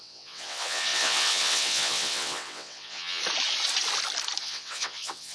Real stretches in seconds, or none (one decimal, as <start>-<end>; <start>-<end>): 3.2-4.4

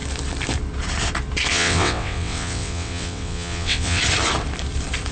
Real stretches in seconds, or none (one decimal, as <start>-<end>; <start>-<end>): 0.0-1.5; 4.0-5.1

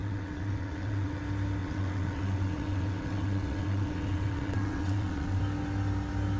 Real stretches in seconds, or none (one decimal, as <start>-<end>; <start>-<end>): 1.2-1.6; 5.4-6.4

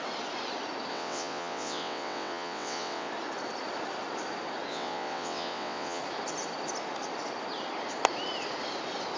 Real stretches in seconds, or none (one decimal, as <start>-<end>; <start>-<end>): 0.0-0.9; 3.1-4.7; 6.0-9.2

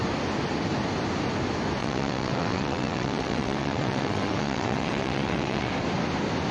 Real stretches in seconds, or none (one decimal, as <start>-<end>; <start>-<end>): 0.0-1.8; 5.7-6.5